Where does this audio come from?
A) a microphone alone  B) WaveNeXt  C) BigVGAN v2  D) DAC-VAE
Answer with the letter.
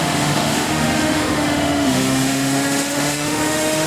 D